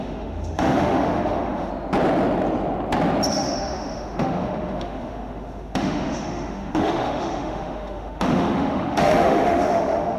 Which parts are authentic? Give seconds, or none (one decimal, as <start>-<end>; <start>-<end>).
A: 1.7-3.3